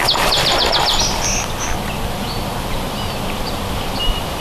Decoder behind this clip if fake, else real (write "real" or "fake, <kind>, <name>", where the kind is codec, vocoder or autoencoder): real